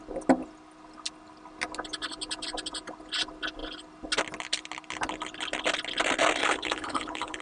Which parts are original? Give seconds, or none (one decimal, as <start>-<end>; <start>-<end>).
0.0-6.4